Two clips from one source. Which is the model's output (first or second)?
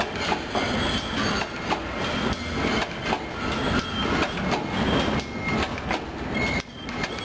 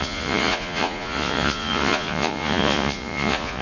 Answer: second